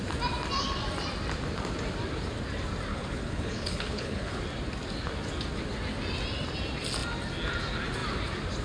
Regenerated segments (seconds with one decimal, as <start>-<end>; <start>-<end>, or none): 2.9-4.4